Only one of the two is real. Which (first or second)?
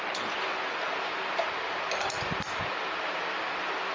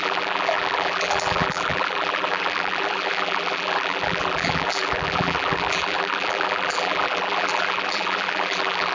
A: first